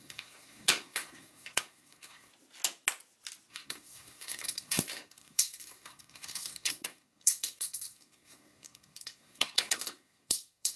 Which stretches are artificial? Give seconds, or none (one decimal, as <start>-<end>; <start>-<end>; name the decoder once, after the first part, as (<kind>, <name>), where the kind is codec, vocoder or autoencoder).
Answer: 0.0-2.3 (codec, SNAC); 3.5-10.8